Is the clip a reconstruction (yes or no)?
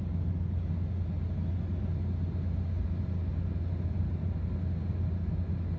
no